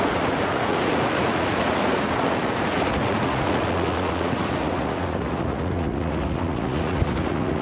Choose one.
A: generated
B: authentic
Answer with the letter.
A